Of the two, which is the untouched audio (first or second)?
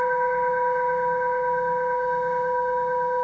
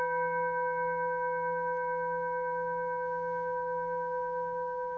second